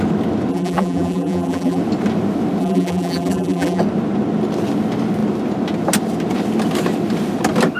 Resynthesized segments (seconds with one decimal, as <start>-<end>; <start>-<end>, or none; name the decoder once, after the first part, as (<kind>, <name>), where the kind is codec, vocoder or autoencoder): 0.5-1.8 (vocoder, BigVGAN v2); 2.6-3.8